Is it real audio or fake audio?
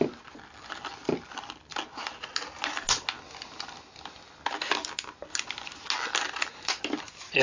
real